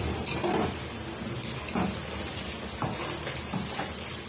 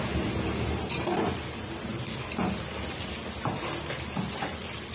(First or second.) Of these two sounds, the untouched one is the first